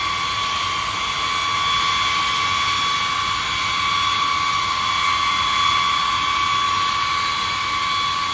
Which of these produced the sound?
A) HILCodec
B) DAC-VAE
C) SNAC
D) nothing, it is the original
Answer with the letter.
D